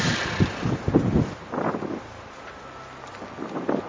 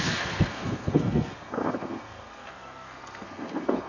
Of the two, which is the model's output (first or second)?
second